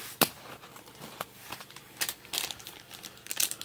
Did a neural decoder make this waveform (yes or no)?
yes